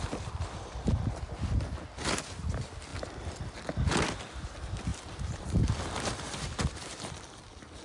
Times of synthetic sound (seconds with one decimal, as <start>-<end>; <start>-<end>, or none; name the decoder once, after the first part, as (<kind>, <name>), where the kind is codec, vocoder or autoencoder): 4.9-7.2 (vocoder, BigVGAN v2)